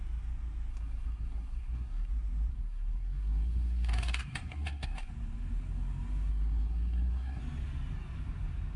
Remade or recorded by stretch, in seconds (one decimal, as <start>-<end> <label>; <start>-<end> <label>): 0.0-0.7 recorded; 0.7-2.1 remade; 2.1-2.5 recorded; 2.5-5.1 remade; 5.1-6.3 recorded; 6.3-7.4 remade; 7.4-8.8 recorded